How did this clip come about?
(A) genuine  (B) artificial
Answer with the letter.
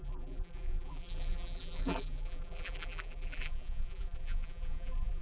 B